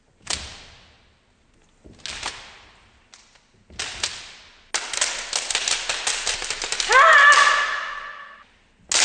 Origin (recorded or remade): recorded